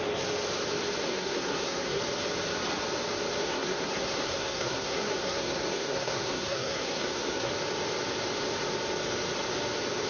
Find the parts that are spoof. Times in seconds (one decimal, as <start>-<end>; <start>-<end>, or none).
1.0-2.0; 3.4-7.5